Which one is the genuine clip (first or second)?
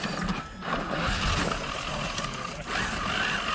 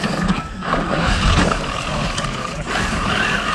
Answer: first